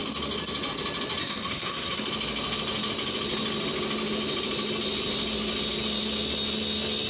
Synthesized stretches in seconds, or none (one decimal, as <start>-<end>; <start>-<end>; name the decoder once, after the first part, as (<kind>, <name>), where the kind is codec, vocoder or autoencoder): 1.2-2.1 (codec, SNAC)